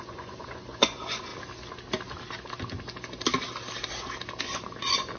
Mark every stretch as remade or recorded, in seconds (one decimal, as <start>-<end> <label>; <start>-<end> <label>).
0.0-1.3 remade; 1.3-4.4 recorded; 4.4-5.2 remade